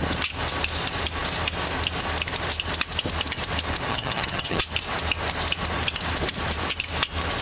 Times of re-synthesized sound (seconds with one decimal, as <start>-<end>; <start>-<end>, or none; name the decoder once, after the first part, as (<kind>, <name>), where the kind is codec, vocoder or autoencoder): 3.9-4.6 (vocoder, HiFi-GAN)